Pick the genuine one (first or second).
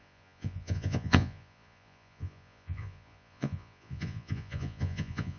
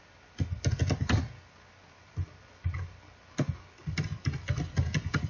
second